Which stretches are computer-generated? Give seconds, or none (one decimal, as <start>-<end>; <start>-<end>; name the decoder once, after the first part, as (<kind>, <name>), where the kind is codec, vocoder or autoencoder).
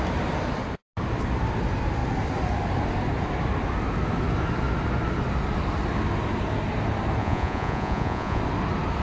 7.2-8.4 (vocoder, Vocos)